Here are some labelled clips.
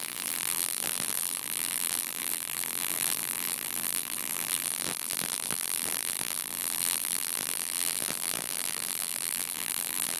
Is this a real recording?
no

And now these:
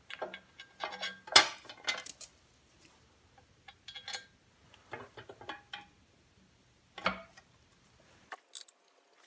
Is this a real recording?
yes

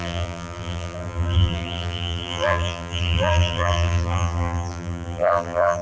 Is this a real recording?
no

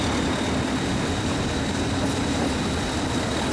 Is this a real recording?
yes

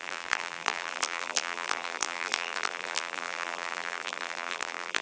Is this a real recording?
no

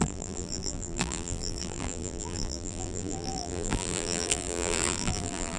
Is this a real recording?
no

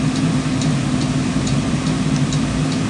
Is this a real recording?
no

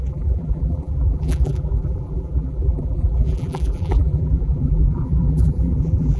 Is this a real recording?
no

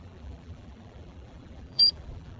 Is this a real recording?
no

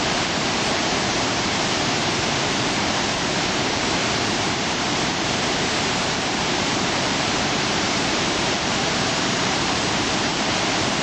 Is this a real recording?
no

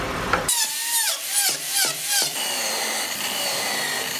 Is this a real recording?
no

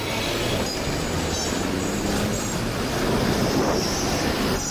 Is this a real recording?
no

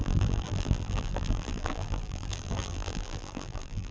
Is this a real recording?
no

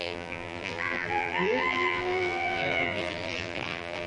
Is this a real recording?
no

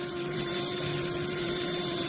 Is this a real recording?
no